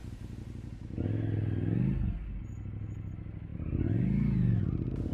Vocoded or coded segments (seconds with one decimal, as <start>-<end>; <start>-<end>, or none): none